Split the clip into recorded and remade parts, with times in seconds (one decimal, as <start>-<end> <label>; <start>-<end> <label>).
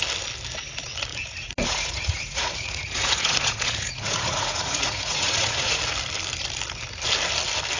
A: 0.0-1.1 recorded; 1.1-5.8 remade; 5.8-7.8 recorded